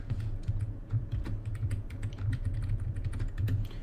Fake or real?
fake